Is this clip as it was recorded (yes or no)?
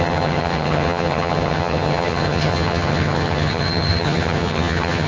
no